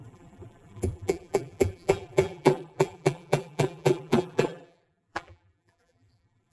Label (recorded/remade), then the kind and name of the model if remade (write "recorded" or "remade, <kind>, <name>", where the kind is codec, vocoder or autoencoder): remade, vocoder, BigVGAN v2